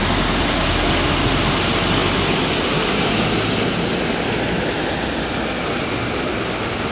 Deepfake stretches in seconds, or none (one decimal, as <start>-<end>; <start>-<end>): none